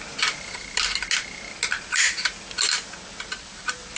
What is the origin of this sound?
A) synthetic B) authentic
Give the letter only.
B